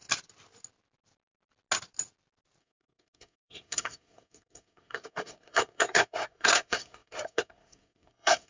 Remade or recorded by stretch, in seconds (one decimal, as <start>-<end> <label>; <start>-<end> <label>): 0.0-2.6 recorded; 2.6-8.5 remade